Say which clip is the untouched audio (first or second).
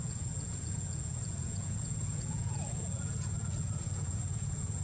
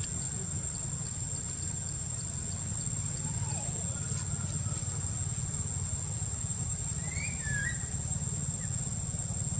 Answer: second